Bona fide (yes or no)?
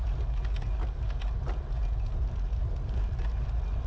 yes